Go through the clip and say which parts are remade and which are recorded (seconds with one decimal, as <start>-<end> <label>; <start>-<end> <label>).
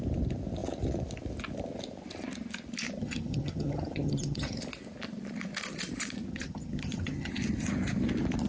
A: 0.0-3.0 recorded; 3.0-4.6 remade; 4.6-6.3 recorded; 6.3-7.3 remade; 7.3-8.5 recorded